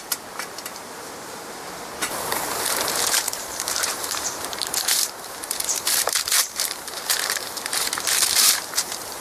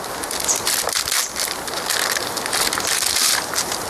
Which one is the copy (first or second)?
first